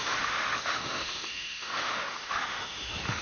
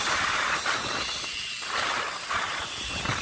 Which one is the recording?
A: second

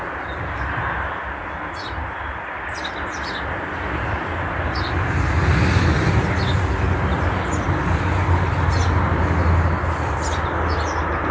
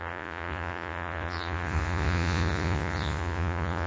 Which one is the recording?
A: first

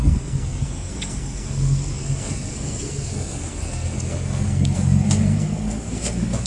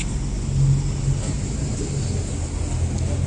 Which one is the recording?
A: second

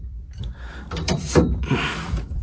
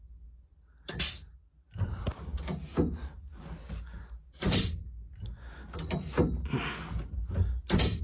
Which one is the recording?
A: second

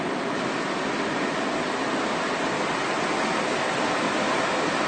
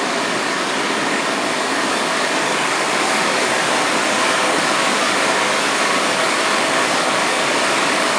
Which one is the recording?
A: first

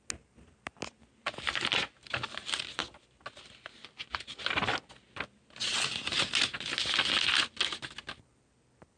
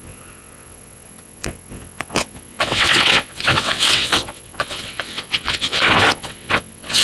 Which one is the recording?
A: first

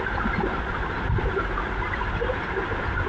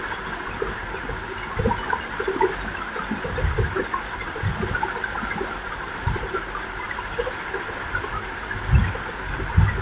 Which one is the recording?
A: second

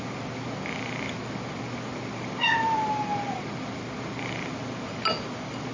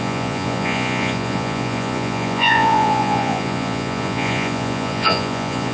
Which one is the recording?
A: first